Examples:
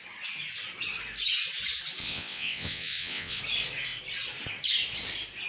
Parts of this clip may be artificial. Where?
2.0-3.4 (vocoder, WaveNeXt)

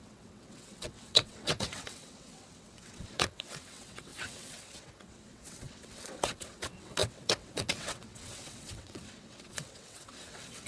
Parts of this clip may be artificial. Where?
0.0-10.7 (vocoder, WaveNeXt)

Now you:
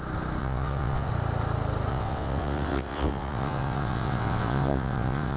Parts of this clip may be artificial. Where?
0.4-1.1 (vocoder, WaveNeXt); 1.9-5.4

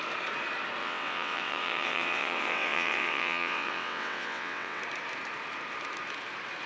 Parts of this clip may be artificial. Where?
0.8-4.8 (vocoder, WaveNeXt)

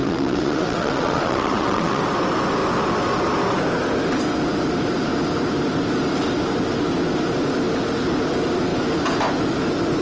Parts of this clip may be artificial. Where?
0.0-2.0 (vocoder, WaveNeXt)

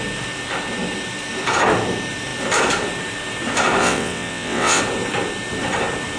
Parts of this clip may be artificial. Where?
3.8-4.8 (vocoder, WaveNeXt)

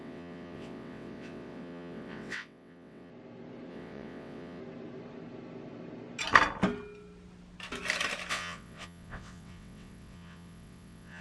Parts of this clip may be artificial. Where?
0.0-3.1 (vocoder, WaveNeXt); 3.7-4.6; 8.3-11.2

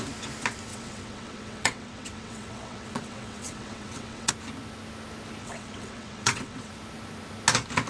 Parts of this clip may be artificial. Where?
0.7-4.3 (vocoder, WaveNeXt); 5.4-6.7